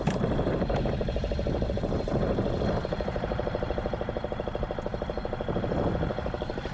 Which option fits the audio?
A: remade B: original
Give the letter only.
A